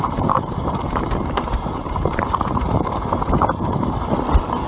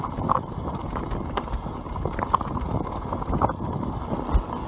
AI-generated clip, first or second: first